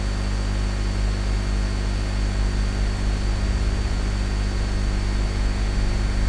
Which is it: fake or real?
real